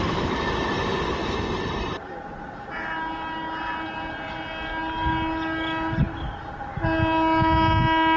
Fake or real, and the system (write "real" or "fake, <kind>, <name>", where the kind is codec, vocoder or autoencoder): real